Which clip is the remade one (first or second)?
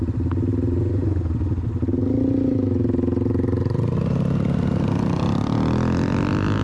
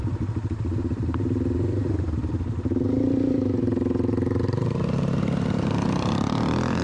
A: second